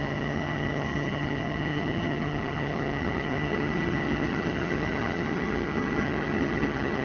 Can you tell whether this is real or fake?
fake